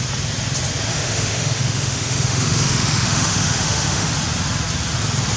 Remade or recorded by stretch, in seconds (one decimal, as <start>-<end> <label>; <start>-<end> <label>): 0.0-0.9 recorded; 0.9-4.1 remade; 4.1-5.4 recorded